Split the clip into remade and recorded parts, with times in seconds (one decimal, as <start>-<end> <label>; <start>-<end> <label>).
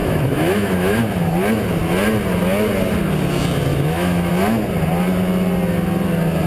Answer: 0.0-1.0 remade; 1.0-3.7 recorded; 3.7-4.3 remade; 4.3-6.5 recorded